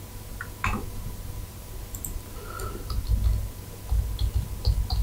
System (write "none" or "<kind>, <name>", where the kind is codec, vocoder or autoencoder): none